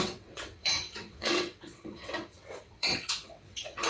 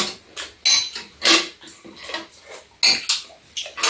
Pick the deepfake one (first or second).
first